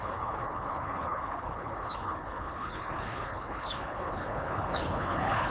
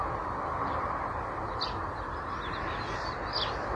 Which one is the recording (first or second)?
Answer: second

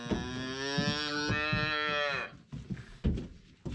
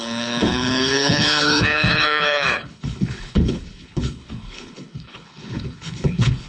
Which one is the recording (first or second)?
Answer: first